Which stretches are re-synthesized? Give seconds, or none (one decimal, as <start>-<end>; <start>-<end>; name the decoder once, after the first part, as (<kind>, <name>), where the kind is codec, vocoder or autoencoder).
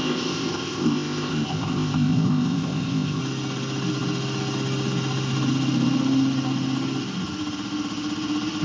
0.0-3.2 (codec, ZipCodec)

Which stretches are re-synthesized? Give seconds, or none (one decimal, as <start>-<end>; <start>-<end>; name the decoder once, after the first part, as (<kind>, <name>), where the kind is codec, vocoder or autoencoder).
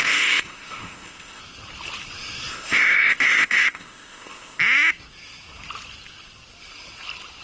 0.0-1.4 (codec, ZipCodec); 2.5-4.6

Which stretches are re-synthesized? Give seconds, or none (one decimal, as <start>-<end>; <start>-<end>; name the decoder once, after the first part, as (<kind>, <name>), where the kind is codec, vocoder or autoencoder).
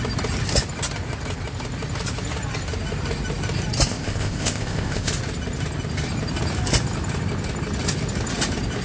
3.9-5.1 (codec, ZipCodec)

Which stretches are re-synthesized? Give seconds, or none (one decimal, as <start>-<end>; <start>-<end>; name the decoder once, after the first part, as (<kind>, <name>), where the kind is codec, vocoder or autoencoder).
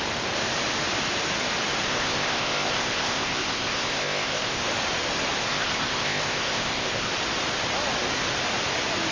1.9-4.6 (codec, ZipCodec); 5.5-7.1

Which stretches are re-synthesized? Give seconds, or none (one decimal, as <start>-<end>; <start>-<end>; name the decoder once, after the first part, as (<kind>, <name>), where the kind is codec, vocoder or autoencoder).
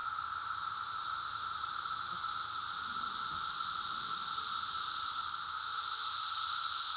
none